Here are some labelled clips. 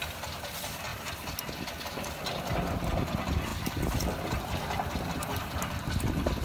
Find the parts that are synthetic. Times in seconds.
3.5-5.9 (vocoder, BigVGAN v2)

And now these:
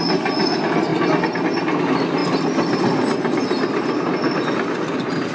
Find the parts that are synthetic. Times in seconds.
none

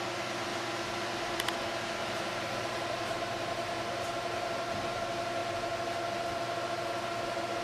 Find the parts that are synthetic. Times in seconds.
2.0-5.0 (vocoder, BigVGAN v2)

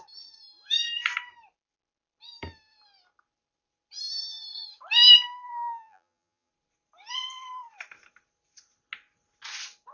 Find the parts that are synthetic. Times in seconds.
5.5-6.5 (vocoder, BigVGAN v2)